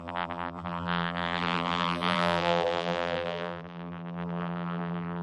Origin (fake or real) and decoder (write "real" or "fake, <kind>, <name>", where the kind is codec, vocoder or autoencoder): fake, vocoder, BigVGAN v2